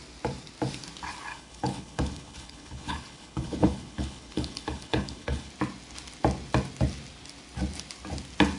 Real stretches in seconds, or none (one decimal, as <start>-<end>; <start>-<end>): 0.0-1.3; 5.5-8.6